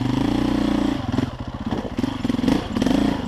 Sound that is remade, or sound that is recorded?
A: recorded